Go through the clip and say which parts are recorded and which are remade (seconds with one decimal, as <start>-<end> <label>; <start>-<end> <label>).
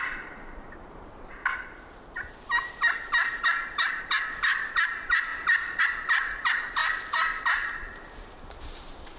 0.0-5.3 remade; 5.3-5.8 recorded; 5.8-6.8 remade; 6.8-7.4 recorded; 7.4-9.2 remade